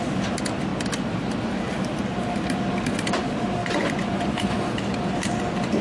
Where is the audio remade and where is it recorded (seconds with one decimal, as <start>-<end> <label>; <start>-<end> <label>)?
0.0-3.6 recorded; 3.6-4.7 remade; 4.7-5.8 recorded